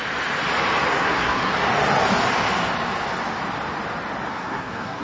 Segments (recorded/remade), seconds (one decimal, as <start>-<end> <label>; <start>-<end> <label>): 0.0-0.9 recorded; 0.9-1.5 remade; 1.5-4.3 recorded; 4.3-5.0 remade